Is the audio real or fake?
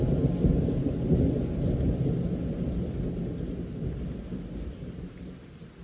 real